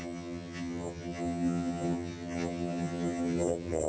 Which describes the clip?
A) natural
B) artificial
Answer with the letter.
B